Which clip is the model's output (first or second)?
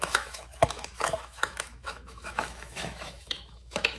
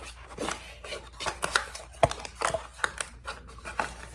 first